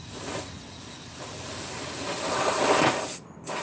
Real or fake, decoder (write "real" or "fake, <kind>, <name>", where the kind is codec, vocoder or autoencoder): real